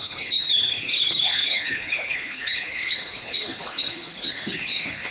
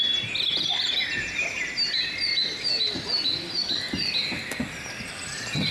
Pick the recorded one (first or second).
second